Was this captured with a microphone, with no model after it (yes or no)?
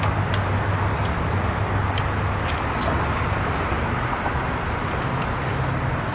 yes